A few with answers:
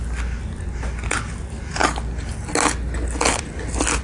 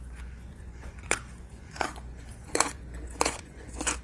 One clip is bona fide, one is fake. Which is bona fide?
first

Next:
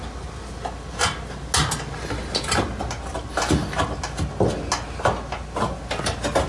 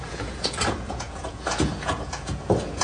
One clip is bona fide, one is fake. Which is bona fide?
first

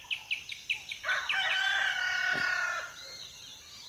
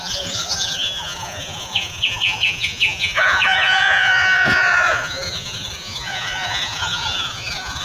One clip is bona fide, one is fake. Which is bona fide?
first